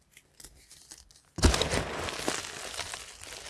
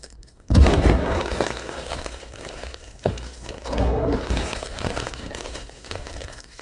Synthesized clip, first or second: second